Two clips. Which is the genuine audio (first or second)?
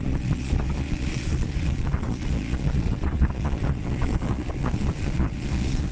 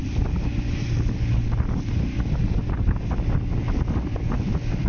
second